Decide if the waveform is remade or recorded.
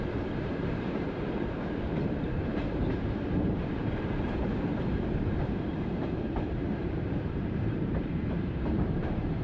remade